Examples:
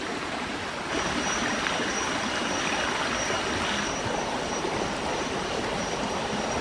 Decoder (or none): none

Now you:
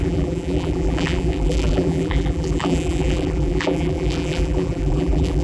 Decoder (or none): vocoder, BigVGAN v2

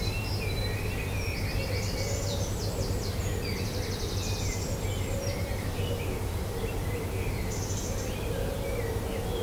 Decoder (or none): none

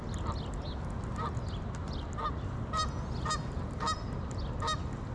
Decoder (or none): none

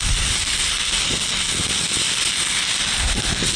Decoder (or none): none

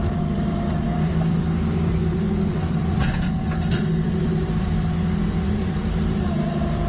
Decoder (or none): vocoder, BigVGAN v2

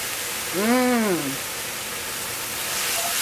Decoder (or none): none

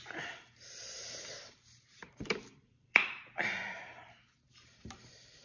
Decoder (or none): vocoder, BigVGAN v2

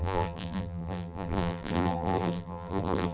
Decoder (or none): vocoder, BigVGAN v2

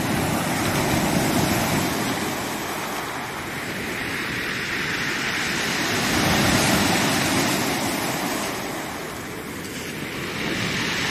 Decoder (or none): none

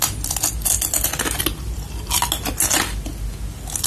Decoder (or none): none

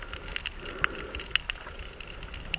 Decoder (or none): none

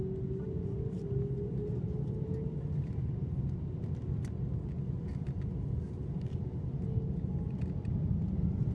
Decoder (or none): none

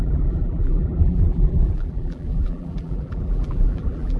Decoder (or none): vocoder, BigVGAN v2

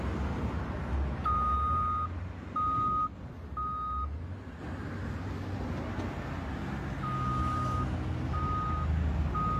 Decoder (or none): none